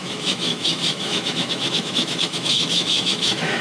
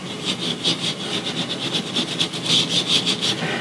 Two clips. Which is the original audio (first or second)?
second